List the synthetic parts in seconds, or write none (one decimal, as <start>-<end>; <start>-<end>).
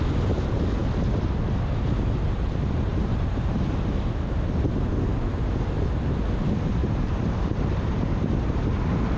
2.9-3.8; 6.8-8.1